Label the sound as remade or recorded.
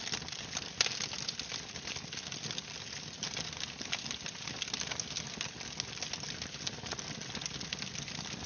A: recorded